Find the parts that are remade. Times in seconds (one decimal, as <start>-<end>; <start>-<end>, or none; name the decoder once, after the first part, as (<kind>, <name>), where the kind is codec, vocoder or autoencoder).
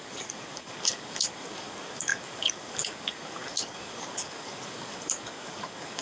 0.0-6.0 (codec, DAC)